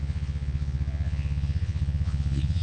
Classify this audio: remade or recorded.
remade